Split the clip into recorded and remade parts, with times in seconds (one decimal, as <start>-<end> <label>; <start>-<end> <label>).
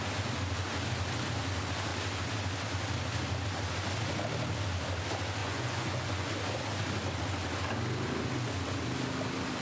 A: 0.0-5.4 recorded; 5.4-6.3 remade; 6.3-9.6 recorded